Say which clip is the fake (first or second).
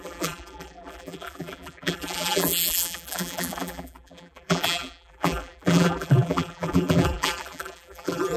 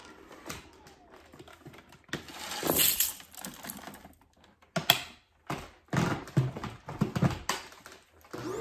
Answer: first